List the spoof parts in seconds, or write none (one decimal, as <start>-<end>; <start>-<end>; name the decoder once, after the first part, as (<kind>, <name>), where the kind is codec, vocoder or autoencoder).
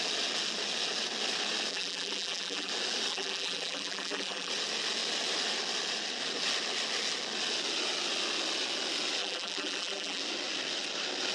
1.7-2.7 (vocoder, BigVGAN v2); 3.1-4.5; 9.2-10.2